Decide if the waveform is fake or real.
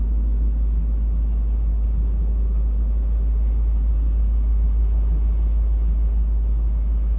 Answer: real